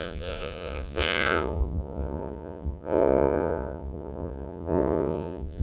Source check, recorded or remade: remade